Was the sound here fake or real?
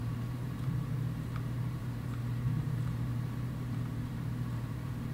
fake